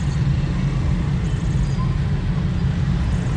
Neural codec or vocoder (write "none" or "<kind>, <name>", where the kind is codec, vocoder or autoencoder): none